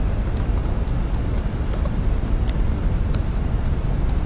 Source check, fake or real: real